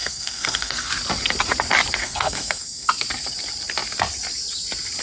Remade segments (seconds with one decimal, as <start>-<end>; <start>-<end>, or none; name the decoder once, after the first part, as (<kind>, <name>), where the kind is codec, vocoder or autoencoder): 0.0-0.9 (codec, SNAC); 2.0-2.9